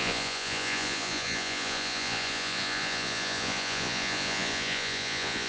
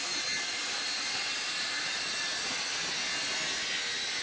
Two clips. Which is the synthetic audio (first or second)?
first